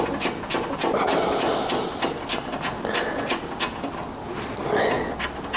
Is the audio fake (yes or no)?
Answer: no